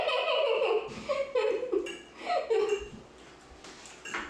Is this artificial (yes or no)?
no